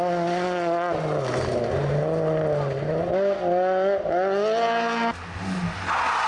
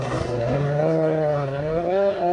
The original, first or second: first